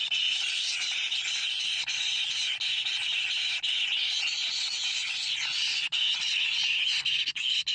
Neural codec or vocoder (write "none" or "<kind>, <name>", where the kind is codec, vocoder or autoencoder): none